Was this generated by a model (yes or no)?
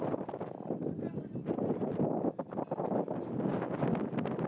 no